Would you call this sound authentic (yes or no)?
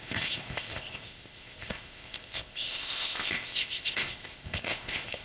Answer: no